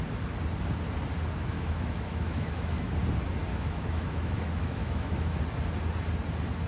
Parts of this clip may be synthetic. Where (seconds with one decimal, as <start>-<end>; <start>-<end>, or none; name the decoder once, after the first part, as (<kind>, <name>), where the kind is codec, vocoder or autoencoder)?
1.4-2.9 (autoencoder, DAC-VAE); 3.5-5.4